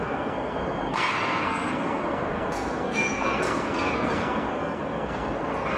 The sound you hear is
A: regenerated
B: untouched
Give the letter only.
A